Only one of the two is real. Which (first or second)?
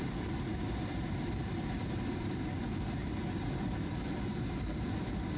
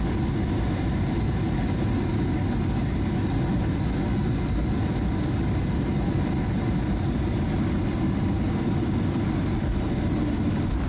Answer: second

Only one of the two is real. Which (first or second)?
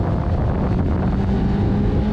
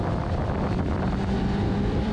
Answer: first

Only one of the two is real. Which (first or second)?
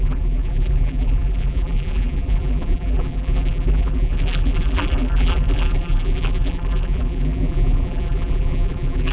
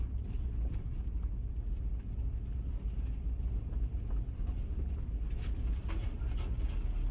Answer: second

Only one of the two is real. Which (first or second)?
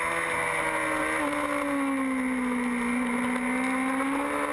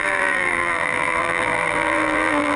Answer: first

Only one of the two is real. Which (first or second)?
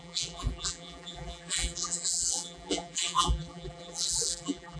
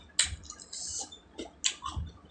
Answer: second